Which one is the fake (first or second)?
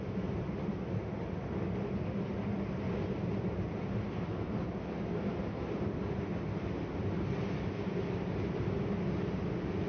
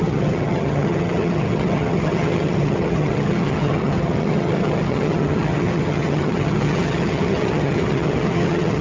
second